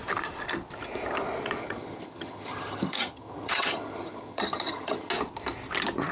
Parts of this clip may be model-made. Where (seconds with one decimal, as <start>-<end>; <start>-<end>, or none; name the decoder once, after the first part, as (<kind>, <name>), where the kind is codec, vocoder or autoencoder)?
1.6-5.1 (vocoder, HiFi-GAN)